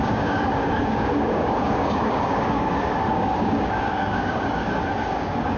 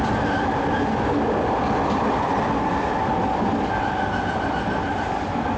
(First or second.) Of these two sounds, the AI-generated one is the first